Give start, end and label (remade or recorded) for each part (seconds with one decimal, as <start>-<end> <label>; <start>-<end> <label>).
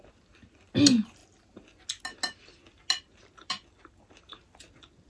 0.0-5.1 recorded